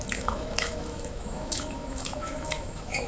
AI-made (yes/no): yes